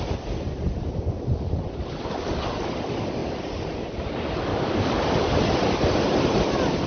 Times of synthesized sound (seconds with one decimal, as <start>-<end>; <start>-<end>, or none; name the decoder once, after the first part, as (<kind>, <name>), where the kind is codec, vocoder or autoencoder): 4.5-5.0 (codec, DAC)